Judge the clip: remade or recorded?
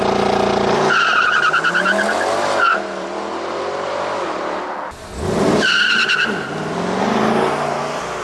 recorded